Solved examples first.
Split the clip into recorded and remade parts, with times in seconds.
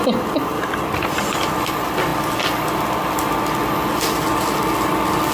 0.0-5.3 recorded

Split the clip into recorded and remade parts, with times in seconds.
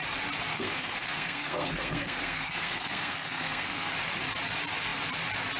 0.0-0.5 recorded; 0.5-3.9 remade; 3.9-5.6 recorded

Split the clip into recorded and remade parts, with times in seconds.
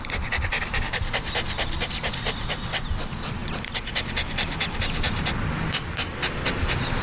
0.0-7.0 recorded